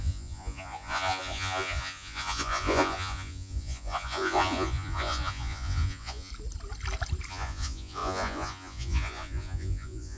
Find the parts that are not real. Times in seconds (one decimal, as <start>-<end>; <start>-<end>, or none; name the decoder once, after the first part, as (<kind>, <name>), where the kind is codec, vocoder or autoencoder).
0.0-6.3 (vocoder, Vocos); 7.3-10.2